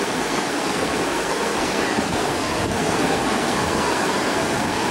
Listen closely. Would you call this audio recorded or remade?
remade